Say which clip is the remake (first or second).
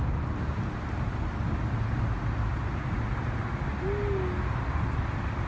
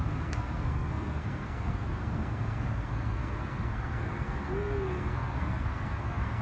second